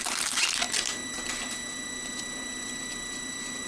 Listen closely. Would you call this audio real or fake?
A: real